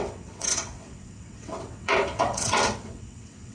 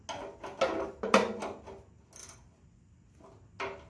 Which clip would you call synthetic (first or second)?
first